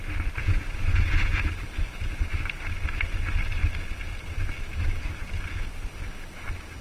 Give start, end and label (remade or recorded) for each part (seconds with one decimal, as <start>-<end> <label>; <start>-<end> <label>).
0.0-0.4 recorded; 0.4-1.5 remade; 1.5-6.8 recorded